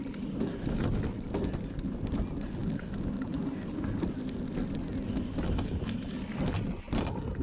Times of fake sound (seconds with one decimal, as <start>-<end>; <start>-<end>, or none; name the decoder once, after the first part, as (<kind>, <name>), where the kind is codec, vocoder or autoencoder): none